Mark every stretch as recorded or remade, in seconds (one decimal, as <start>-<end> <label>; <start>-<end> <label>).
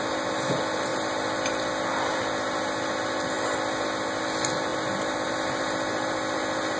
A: 0.0-0.9 recorded; 0.9-1.7 remade; 1.7-4.7 recorded; 4.7-5.3 remade; 5.3-6.8 recorded